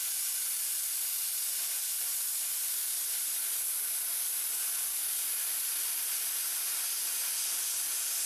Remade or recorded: recorded